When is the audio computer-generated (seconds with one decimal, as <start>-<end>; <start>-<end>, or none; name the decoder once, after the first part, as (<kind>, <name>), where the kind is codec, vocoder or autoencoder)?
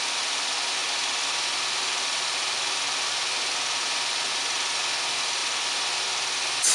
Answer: none